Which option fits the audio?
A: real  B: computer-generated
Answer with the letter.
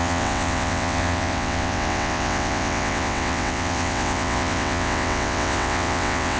B